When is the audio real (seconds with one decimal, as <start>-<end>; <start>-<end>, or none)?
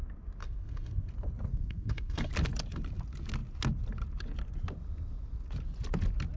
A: 0.0-0.4; 1.1-1.5; 2.3-6.4